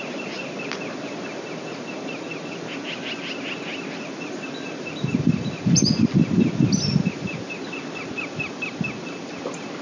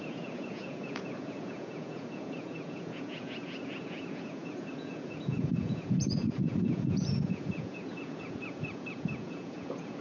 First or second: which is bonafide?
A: first